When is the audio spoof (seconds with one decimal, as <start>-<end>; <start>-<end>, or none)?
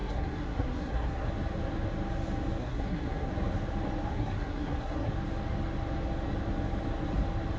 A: 0.0-1.3; 2.6-3.3; 4.1-5.1